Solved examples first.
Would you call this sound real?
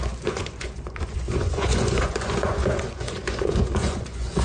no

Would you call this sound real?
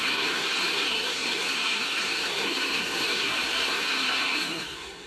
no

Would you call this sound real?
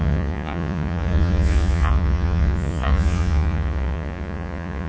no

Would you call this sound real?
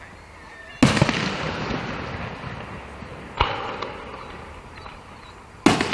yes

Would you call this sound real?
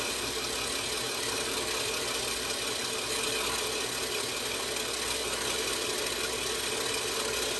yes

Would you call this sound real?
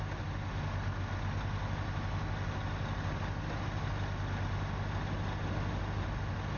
yes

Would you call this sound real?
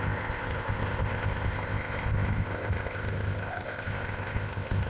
no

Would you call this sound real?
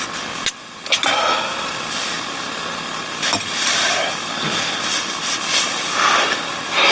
yes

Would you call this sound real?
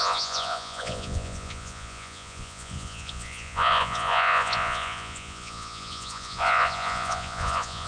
no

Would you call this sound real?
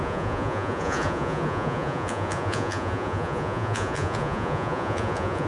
no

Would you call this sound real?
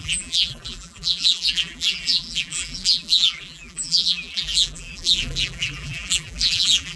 no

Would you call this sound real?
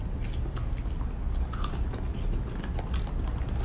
yes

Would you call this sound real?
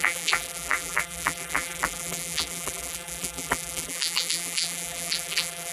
no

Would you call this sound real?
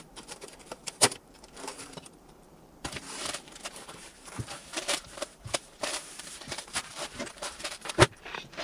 no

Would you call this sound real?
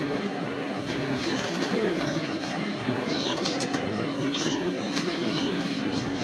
no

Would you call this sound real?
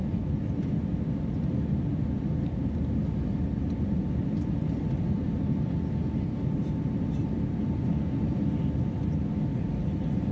yes